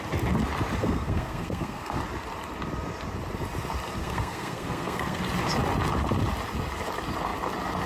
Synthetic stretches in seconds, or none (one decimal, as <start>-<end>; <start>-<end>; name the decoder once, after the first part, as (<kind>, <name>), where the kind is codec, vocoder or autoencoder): 0.8-2.0 (codec, SNAC); 4.0-5.2